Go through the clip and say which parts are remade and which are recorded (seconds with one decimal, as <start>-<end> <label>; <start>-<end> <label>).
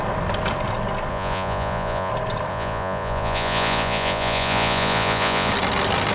0.0-1.1 recorded; 1.1-2.1 remade; 2.1-2.5 recorded; 2.5-5.5 remade; 5.5-6.1 recorded